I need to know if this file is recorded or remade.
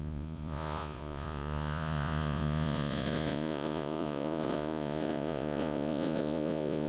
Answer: remade